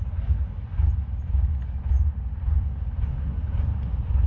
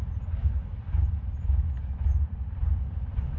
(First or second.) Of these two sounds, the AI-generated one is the second